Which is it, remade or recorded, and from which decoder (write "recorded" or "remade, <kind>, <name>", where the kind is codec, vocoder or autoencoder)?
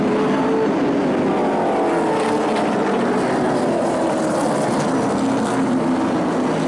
recorded